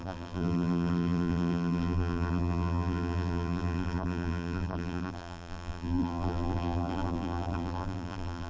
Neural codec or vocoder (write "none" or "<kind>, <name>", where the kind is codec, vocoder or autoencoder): vocoder, BigVGAN v2